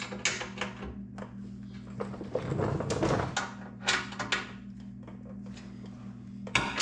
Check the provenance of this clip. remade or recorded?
recorded